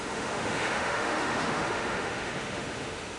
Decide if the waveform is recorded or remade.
remade